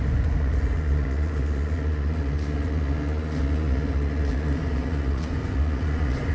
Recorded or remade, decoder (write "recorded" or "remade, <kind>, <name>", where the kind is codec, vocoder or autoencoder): remade, vocoder, Vocos